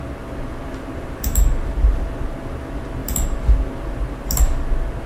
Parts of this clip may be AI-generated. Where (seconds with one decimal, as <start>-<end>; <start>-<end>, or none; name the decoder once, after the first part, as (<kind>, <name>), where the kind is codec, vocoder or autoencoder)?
0.6-1.3 (vocoder, BigVGAN v2)